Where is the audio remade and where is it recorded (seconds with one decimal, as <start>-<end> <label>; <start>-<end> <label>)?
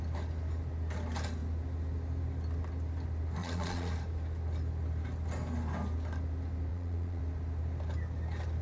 0.0-3.4 recorded; 3.4-3.9 remade; 3.9-6.7 recorded; 6.7-7.2 remade; 7.2-8.6 recorded